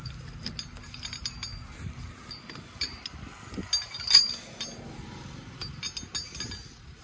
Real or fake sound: real